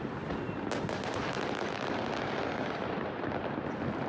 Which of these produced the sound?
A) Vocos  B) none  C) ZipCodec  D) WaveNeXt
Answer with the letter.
B